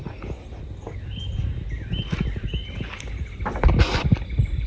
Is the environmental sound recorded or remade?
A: recorded